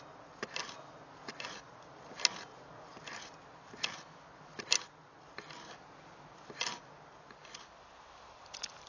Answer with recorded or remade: recorded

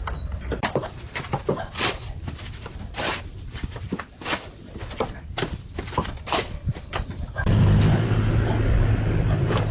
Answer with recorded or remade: recorded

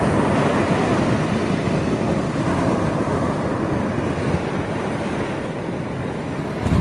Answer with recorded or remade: recorded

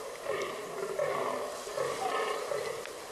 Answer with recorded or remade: recorded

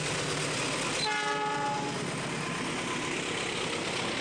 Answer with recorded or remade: recorded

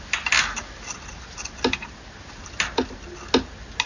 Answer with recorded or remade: recorded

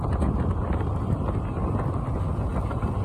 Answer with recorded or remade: remade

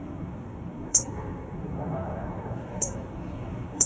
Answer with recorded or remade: remade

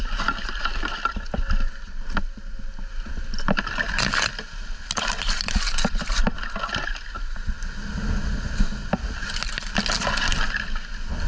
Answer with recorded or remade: recorded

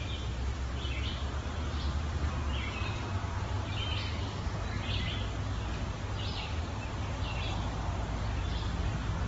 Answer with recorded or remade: recorded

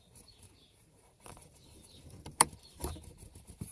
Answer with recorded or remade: remade